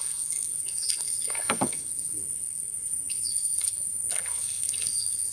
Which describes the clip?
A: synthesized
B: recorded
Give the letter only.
A